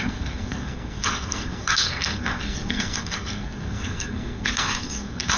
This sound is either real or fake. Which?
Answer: fake